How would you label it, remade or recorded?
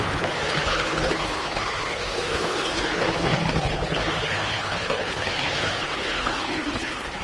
remade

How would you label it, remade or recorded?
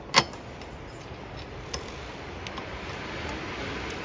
recorded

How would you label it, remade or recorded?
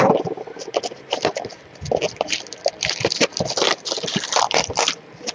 remade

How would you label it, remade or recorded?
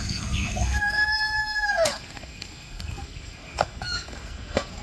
remade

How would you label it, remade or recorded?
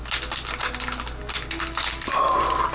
recorded